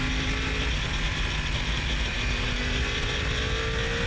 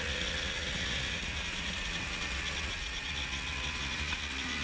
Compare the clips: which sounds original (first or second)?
first